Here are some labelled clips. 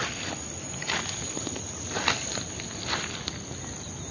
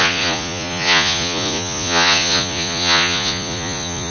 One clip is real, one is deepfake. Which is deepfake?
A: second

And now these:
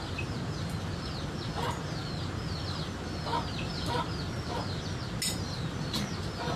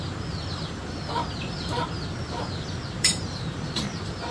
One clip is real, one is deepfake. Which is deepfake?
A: second